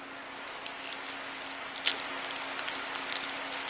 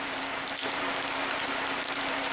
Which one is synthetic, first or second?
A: second